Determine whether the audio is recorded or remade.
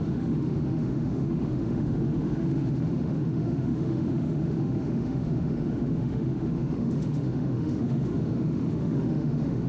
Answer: remade